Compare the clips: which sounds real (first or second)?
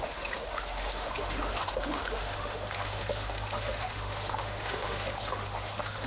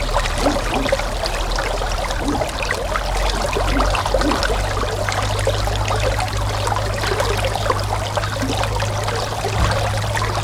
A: second